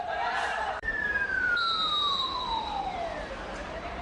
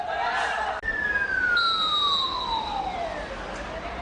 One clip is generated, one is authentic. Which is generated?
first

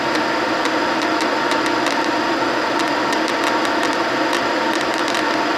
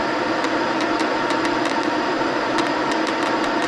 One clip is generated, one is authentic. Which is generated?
second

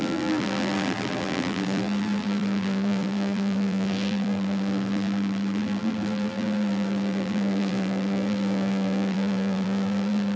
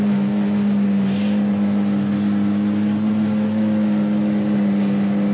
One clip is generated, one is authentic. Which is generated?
first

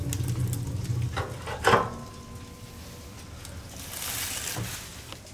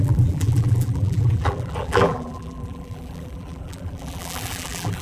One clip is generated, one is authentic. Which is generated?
second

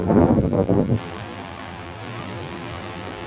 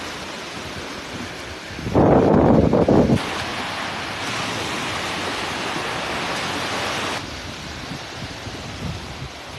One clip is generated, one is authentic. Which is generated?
first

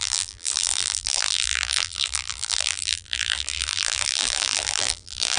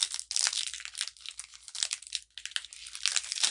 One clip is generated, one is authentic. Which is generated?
first